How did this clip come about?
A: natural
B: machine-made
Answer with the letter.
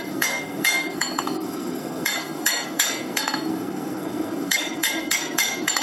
B